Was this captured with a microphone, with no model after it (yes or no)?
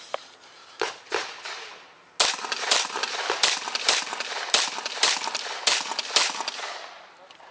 yes